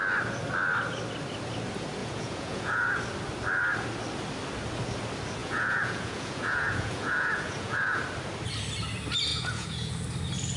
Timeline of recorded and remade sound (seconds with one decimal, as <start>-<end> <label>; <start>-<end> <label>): 0.0-2.0 recorded; 2.0-2.9 remade; 2.9-5.4 recorded; 5.4-8.0 remade; 8.0-9.3 recorded; 9.3-9.9 remade; 9.9-10.6 recorded